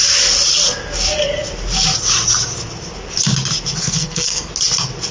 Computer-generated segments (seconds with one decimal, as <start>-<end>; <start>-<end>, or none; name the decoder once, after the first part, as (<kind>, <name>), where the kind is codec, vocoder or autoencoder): 3.8-4.5 (codec, SNAC)